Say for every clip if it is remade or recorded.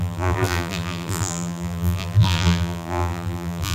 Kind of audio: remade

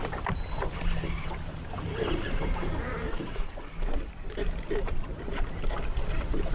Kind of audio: remade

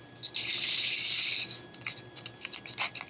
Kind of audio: recorded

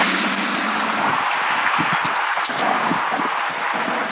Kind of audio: recorded